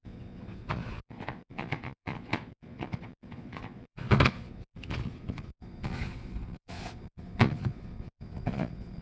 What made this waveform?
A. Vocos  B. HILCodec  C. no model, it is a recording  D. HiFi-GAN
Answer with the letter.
A